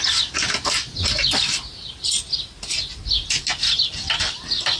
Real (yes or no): yes